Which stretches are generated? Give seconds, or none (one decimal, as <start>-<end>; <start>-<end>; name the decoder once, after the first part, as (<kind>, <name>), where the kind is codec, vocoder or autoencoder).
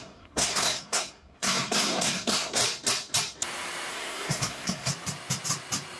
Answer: 0.0-2.6 (codec, SNAC); 3.9-4.9